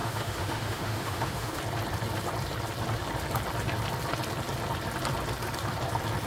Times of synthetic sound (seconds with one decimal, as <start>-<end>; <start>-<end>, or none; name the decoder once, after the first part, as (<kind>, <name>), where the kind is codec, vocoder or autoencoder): 0.0-1.6 (autoencoder, DAC-VAE)